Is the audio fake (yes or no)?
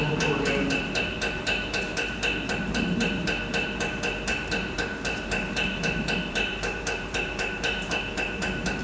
yes